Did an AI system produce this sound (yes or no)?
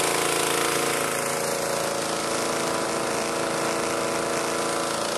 no